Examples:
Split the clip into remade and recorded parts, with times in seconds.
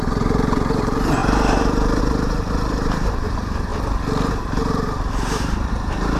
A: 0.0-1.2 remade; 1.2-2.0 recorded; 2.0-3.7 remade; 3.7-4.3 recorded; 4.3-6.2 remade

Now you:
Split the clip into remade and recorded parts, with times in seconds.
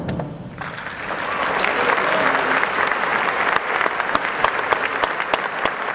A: 0.0-5.9 recorded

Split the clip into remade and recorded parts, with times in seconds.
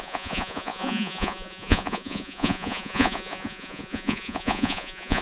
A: 0.0-5.2 remade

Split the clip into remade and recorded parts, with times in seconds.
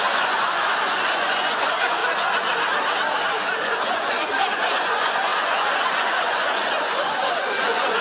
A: 0.0-2.0 remade; 2.0-3.2 recorded; 3.2-8.0 remade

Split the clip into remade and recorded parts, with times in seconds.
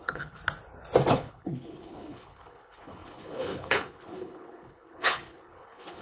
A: 0.0-0.4 remade; 0.4-1.1 recorded; 1.1-6.0 remade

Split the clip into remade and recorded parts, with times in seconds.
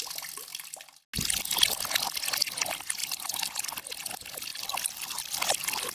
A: 0.0-3.0 recorded; 3.0-3.6 remade; 3.6-4.5 recorded; 4.5-5.5 remade; 5.5-5.9 recorded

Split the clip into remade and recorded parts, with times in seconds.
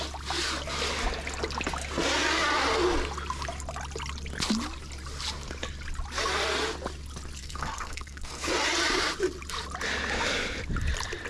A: 0.0-7.4 recorded; 7.4-8.5 remade; 8.5-11.3 recorded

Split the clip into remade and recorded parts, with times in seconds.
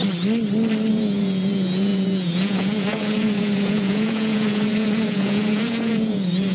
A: 0.0-0.9 recorded; 0.9-6.5 remade